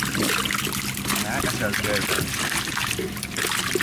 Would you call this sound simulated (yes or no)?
no